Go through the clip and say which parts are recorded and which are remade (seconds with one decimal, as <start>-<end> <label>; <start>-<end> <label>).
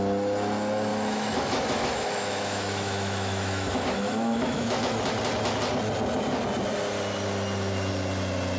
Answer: 0.0-0.9 recorded; 0.9-4.8 remade; 4.8-8.6 recorded